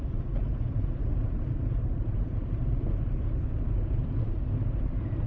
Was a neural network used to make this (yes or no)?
no